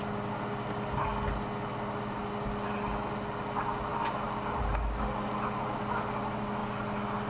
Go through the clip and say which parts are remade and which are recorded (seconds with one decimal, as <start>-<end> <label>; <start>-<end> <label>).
0.0-7.3 recorded